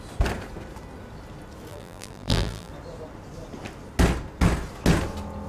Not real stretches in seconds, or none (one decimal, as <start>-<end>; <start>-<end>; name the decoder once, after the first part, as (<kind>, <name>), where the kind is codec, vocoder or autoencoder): 1.7-2.7 (vocoder, BigVGAN v2)